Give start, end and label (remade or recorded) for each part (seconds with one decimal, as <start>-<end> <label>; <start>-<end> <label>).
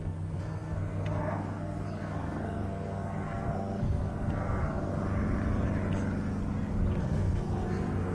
0.0-4.9 remade; 4.9-7.0 recorded; 7.0-8.1 remade